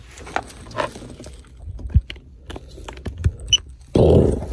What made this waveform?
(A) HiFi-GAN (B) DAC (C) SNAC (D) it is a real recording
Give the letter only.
D